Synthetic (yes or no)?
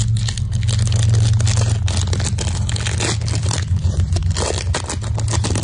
no